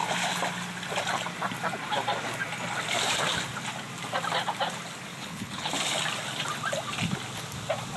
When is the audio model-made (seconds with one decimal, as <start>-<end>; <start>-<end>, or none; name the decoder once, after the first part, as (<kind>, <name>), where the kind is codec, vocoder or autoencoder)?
5.1-5.7 (codec, HILCodec)